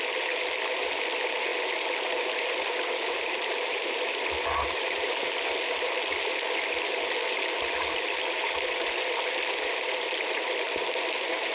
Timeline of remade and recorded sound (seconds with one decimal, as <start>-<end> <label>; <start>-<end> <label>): 0.0-11.5 recorded